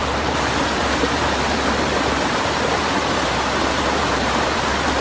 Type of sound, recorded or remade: remade